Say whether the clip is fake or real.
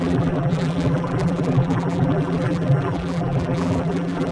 fake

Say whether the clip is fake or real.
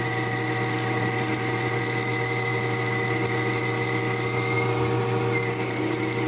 real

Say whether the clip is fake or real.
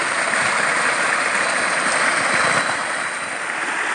real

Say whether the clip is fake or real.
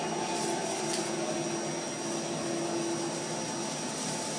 real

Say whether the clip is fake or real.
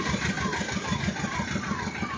real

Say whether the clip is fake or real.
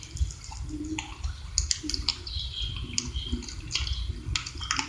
real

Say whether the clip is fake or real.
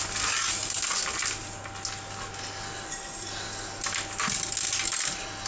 real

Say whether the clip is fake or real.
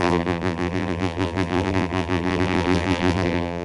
fake